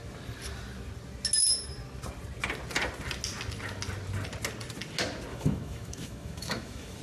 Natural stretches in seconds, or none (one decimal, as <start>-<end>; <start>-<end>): 0.0-5.3